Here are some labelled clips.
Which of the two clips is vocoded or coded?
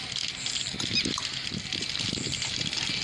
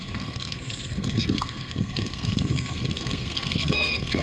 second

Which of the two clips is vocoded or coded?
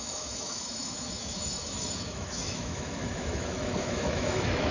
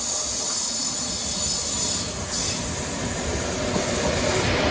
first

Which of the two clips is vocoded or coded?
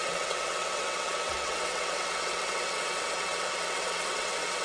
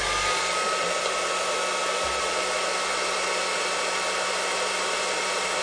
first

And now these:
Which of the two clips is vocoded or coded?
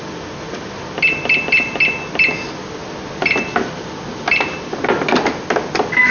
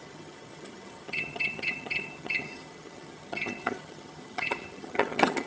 second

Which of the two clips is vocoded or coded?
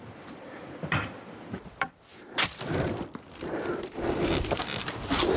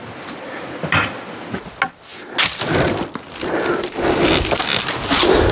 first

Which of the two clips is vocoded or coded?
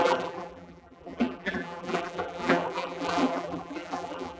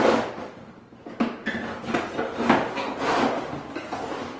first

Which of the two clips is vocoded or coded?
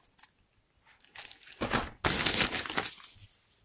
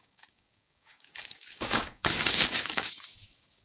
second